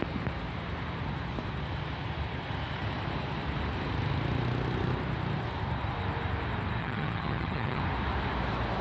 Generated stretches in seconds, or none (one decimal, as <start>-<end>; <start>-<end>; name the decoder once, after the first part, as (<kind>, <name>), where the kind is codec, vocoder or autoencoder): 6.8-7.8 (vocoder, HiFi-GAN)